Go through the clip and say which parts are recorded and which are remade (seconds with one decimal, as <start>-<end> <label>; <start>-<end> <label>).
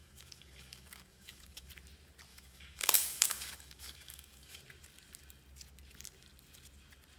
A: 0.0-1.7 remade; 1.7-2.3 recorded; 2.3-4.6 remade; 4.6-7.2 recorded